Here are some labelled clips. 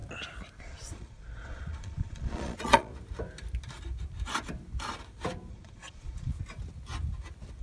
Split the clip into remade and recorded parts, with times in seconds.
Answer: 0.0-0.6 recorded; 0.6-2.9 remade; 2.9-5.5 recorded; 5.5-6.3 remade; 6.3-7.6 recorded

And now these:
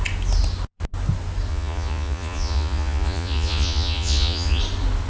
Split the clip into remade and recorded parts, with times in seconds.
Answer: 0.0-1.5 recorded; 1.5-4.6 remade; 4.6-5.1 recorded

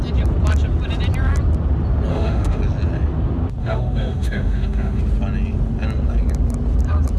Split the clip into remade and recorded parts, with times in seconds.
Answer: 0.0-2.1 recorded; 2.1-2.6 remade; 2.6-3.6 recorded; 3.6-5.0 remade; 5.0-7.2 recorded